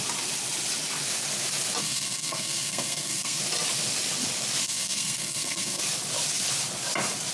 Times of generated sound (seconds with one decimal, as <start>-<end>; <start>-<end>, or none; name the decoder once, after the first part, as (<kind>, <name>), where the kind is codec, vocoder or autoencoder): 1.8-3.4 (codec, SNAC); 4.6-5.8